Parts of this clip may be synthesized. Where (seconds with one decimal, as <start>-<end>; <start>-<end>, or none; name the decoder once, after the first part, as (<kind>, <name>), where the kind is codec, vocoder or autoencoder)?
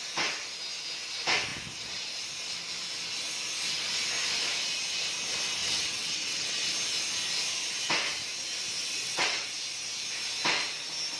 5.6-6.7 (vocoder, WaveNeXt); 8.8-9.5